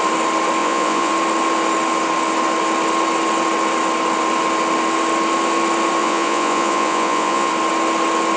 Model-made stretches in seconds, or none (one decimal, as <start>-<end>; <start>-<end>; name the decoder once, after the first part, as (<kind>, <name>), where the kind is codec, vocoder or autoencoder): 0.6-1.1 (vocoder, Vocos); 6.0-7.5